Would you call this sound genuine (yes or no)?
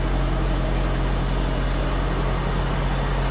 yes